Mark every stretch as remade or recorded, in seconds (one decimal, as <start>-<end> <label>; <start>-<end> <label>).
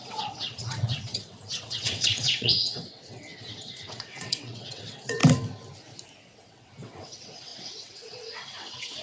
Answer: 0.0-5.2 remade; 5.2-6.2 recorded; 6.2-9.0 remade